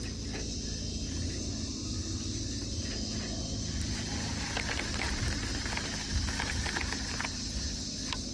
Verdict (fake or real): real